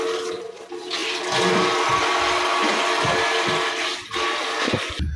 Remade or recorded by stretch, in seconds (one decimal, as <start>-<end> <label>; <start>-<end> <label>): 0.0-5.2 recorded